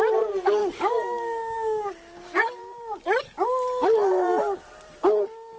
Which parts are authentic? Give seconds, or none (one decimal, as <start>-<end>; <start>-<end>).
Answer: 0.0-0.6; 2.6-5.6